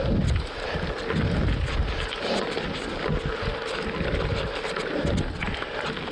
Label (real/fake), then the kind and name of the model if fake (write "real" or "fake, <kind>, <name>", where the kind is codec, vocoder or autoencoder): real